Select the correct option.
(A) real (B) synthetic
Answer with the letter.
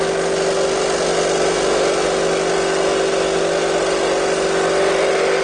A